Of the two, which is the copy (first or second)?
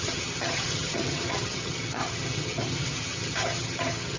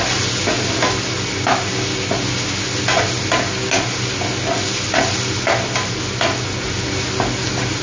first